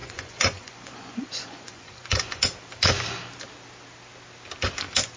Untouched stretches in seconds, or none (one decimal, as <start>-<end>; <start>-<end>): 2.4-5.2

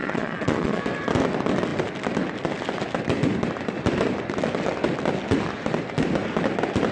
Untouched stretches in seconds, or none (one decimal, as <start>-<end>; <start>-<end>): 0.8-6.9

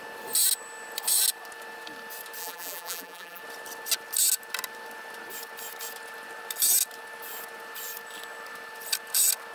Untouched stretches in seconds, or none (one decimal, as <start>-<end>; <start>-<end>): 0.0-2.4; 3.4-9.5

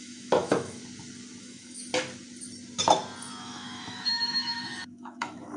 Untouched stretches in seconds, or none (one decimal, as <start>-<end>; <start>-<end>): 0.8-1.4; 1.9-3.3